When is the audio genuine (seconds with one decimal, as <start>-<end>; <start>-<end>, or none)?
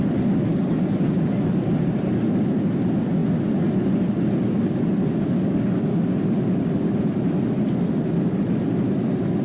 0.0-9.4